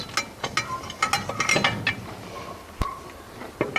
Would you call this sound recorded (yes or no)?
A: yes